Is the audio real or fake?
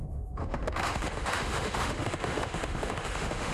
fake